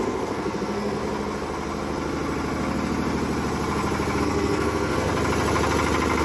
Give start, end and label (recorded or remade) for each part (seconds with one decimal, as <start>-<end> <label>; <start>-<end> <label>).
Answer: 0.0-1.0 remade; 1.0-4.2 recorded; 4.2-5.1 remade; 5.1-6.2 recorded